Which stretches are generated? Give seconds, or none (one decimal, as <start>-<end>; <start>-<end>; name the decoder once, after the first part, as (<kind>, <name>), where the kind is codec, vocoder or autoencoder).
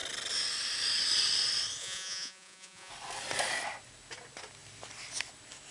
1.8-2.9 (vocoder, Vocos)